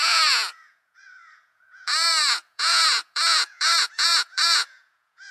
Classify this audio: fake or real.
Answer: fake